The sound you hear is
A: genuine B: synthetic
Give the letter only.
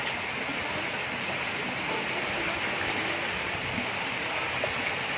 A